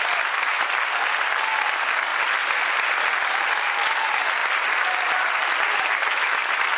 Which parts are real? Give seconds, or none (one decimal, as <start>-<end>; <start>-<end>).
0.0-6.8